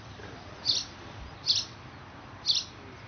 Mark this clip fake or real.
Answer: real